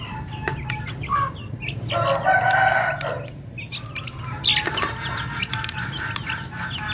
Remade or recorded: recorded